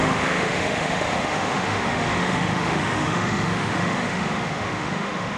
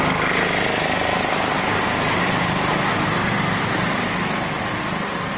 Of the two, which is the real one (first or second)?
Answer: second